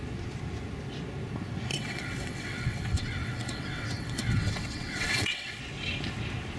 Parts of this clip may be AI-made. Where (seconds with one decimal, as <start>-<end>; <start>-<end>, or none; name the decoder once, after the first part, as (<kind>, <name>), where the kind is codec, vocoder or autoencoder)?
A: 1.7-5.6 (vocoder, WaveNeXt)